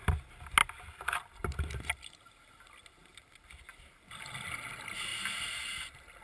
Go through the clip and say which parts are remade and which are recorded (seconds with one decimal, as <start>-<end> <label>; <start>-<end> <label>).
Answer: 0.0-6.2 recorded